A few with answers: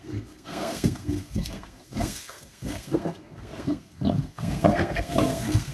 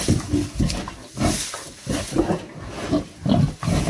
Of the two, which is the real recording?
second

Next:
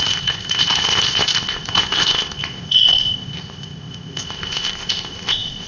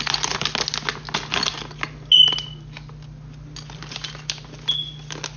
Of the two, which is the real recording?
second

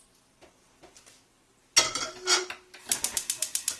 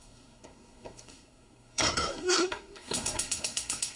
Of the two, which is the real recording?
first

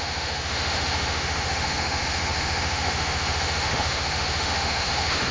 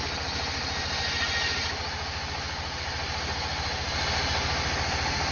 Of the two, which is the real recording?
second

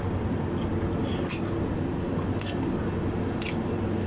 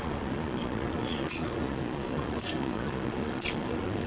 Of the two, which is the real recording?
first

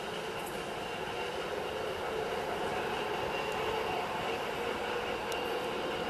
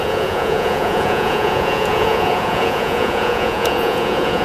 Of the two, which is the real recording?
first